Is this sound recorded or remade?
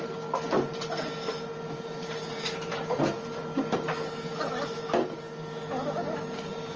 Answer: recorded